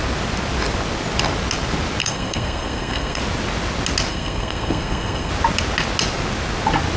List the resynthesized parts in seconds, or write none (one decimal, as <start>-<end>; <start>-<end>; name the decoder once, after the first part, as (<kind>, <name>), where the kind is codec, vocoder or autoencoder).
2.0-3.2 (codec, SNAC); 4.1-5.3